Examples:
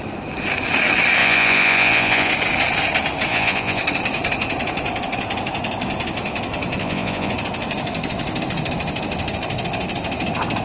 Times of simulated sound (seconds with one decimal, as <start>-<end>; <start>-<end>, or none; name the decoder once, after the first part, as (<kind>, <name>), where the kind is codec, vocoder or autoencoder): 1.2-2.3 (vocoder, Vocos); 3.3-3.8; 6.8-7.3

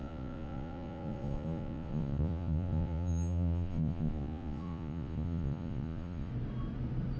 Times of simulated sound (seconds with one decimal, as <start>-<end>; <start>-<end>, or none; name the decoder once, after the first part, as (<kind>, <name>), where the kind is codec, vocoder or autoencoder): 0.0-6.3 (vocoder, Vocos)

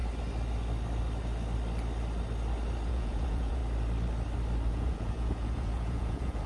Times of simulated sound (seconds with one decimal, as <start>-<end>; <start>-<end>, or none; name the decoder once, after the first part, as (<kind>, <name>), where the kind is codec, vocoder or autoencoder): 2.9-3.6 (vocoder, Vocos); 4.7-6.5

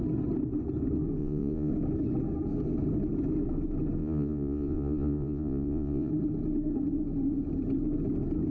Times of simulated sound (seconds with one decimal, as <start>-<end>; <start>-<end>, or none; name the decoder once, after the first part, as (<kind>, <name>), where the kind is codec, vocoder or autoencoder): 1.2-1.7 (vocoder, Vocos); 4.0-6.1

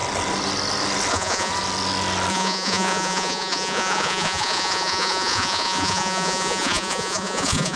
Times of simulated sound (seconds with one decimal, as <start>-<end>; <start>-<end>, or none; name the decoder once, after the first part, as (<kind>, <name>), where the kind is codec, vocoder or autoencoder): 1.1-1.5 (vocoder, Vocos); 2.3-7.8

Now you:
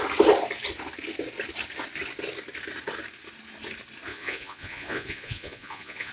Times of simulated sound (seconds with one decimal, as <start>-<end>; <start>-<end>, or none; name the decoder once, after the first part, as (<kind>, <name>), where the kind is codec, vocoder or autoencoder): 4.1-6.1 (vocoder, Vocos)